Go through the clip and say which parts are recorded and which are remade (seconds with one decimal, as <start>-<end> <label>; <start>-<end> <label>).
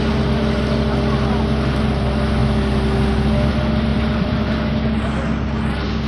0.0-3.9 recorded; 3.9-4.4 remade; 4.4-6.1 recorded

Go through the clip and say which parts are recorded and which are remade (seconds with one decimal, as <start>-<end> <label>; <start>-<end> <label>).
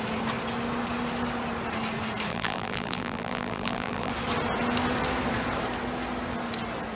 0.0-2.3 recorded; 2.3-4.1 remade; 4.1-7.0 recorded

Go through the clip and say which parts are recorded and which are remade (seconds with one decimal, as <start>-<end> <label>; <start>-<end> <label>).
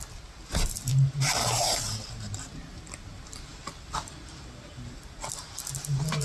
0.0-0.9 recorded; 0.9-2.8 remade; 2.8-6.2 recorded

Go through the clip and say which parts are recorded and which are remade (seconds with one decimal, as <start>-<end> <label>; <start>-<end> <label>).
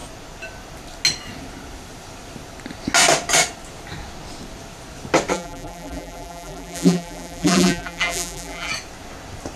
0.0-5.3 recorded; 5.3-8.7 remade; 8.7-9.6 recorded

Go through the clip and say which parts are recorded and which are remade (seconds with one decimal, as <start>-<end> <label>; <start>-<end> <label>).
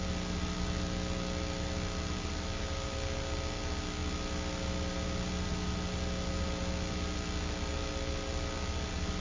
0.0-9.2 recorded